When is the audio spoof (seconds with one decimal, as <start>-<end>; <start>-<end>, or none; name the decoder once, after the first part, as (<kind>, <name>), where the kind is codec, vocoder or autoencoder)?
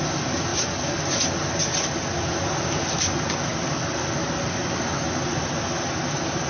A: none